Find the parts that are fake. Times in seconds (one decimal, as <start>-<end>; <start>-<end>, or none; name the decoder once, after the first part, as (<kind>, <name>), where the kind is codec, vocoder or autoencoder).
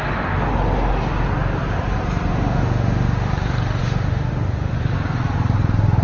2.3-3.3 (autoencoder, DAC-VAE); 3.8-4.7